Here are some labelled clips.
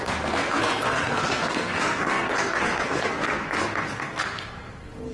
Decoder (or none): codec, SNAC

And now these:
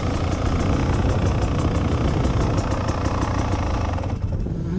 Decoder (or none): none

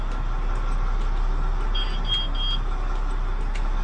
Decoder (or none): none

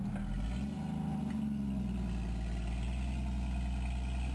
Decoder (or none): none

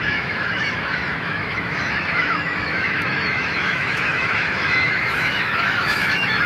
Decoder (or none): autoencoder, DAC-VAE